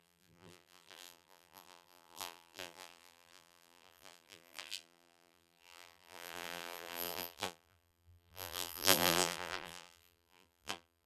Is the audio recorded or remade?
remade